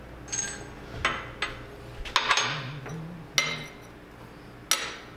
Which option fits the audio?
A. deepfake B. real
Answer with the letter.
B